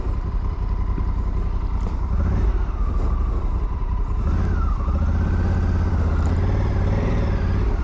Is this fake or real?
fake